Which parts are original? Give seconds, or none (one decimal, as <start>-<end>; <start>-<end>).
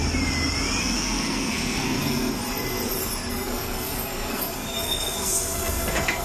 0.0-0.8; 2.4-3.3